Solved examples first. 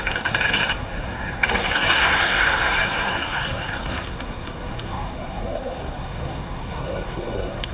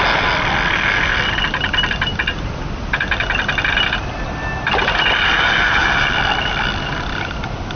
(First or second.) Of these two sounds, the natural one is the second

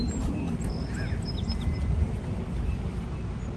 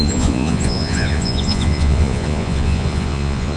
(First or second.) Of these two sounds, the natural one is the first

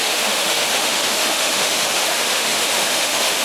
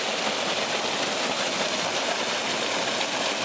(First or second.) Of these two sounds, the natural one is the second